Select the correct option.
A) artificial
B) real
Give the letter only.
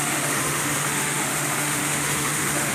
A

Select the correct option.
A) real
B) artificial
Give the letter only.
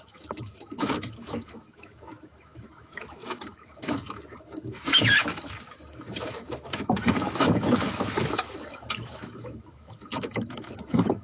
B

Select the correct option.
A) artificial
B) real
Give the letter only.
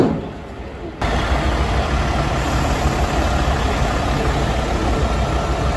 B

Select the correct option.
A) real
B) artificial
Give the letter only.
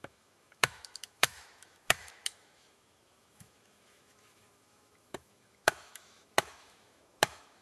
B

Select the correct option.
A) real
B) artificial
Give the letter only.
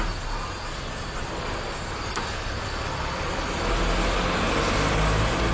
A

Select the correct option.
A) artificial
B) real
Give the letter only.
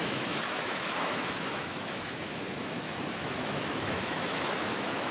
A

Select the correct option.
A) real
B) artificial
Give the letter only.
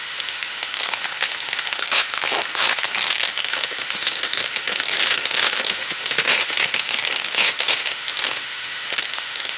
B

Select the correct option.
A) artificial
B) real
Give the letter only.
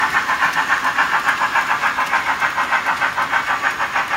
B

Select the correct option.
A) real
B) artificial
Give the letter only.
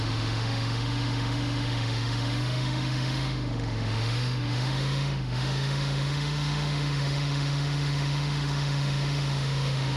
B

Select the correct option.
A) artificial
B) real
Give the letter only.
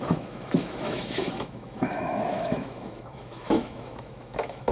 A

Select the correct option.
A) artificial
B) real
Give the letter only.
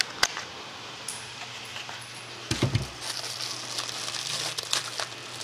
B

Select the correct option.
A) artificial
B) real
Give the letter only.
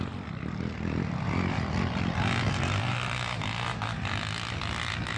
B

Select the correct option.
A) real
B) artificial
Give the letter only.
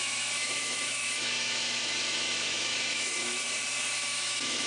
B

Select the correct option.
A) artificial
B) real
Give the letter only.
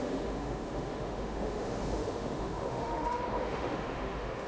A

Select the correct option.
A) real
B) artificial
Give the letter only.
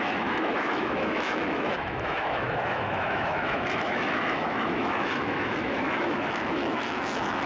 B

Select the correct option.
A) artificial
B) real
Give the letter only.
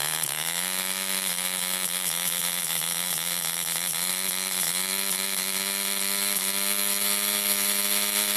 A